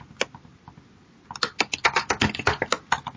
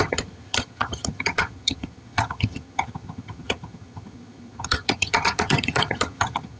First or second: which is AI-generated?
second